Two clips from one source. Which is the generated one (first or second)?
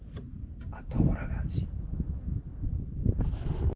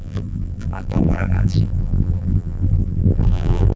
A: second